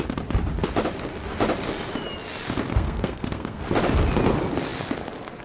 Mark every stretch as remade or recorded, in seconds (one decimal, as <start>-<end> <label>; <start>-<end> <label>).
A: 0.0-2.7 recorded; 2.7-3.6 remade; 3.6-5.4 recorded